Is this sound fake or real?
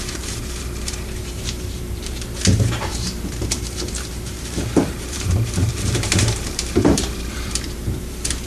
fake